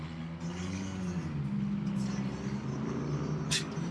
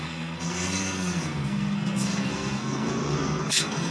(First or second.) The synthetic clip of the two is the second